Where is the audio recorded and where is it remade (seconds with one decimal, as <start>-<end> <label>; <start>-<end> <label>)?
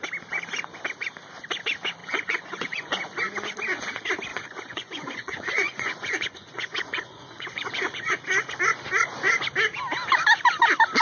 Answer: 0.0-2.0 recorded; 2.0-3.0 remade; 3.0-4.3 recorded; 4.3-8.2 remade; 8.2-11.0 recorded